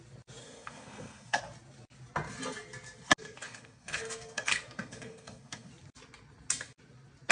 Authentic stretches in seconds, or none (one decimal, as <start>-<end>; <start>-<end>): 0.0-0.4; 1.4-3.2; 5.7-7.3

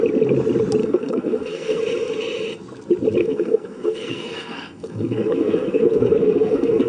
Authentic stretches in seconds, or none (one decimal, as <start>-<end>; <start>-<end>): 0.0-0.8; 1.8-3.2